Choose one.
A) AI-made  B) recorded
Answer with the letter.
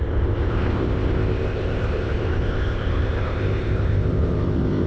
A